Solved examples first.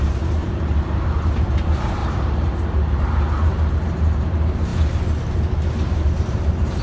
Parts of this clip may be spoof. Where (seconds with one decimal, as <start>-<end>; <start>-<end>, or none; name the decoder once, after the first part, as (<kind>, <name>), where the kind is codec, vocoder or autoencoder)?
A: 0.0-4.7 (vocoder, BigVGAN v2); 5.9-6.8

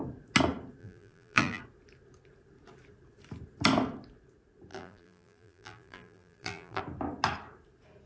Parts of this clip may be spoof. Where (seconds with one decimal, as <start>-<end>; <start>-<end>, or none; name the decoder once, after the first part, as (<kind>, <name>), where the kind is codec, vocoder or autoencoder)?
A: 0.8-1.6 (vocoder, BigVGAN v2); 4.7-6.8

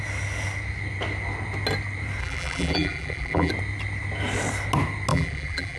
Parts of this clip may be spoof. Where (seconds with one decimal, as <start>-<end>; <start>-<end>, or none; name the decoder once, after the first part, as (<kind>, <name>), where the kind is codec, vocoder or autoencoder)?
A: 2.2-3.5 (vocoder, BigVGAN v2); 5.1-5.8

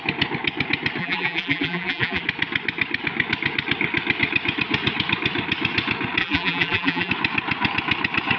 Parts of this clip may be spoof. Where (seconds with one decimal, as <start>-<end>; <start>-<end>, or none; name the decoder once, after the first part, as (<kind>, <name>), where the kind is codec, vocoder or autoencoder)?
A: 1.0-2.2 (vocoder, BigVGAN v2); 6.2-7.1

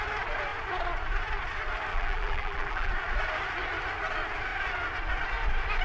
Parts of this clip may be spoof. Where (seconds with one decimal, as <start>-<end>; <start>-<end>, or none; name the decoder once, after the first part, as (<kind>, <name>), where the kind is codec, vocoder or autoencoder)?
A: 1.9-2.9 (vocoder, BigVGAN v2)

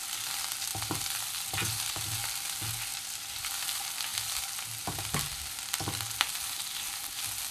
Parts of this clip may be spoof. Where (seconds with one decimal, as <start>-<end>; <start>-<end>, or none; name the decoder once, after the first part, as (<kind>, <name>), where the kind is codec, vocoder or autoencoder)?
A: 0.7-1.9 (vocoder, BigVGAN v2); 2.9-3.4

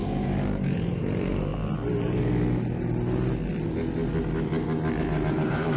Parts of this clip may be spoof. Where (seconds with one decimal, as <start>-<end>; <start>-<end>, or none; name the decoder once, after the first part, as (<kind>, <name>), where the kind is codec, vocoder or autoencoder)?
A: 0.0-1.5 (vocoder, BigVGAN v2); 5.0-5.8